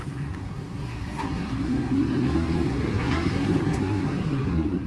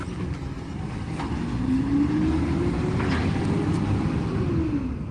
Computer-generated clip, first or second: first